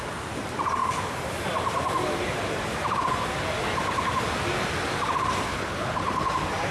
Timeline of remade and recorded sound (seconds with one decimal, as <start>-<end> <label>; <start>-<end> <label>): 0.0-5.5 recorded; 5.5-6.3 remade; 6.3-6.7 recorded